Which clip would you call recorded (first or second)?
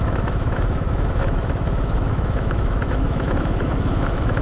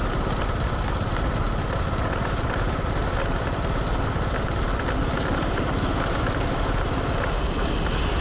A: second